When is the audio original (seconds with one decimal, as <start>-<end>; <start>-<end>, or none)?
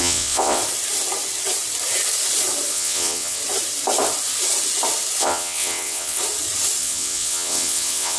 0.6-2.7; 3.4-5.2; 6.2-6.8